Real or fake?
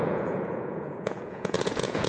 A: fake